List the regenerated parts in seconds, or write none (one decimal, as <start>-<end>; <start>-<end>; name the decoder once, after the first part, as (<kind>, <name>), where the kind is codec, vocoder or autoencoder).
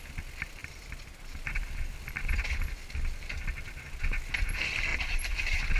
none